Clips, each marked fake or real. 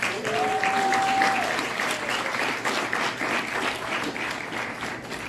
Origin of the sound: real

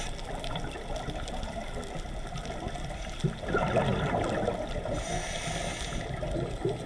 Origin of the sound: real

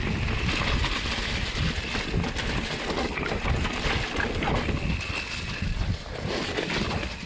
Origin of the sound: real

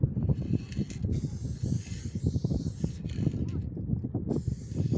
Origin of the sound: real